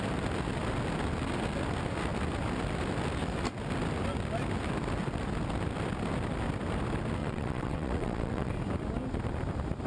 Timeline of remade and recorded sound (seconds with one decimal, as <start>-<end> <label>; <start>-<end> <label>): 0.0-7.2 recorded; 7.2-8.5 remade; 8.5-9.9 recorded